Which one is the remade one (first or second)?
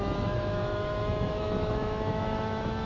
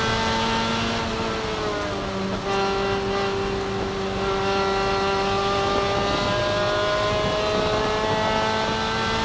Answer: first